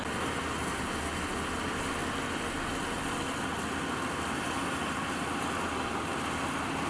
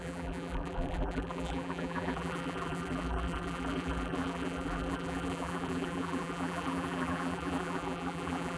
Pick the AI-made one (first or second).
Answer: second